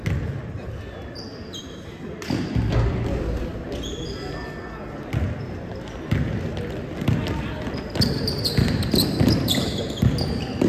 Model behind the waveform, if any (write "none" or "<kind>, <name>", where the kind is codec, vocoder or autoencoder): none